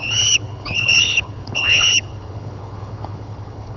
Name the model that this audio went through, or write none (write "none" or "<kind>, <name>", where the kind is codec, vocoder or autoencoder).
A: codec, HILCodec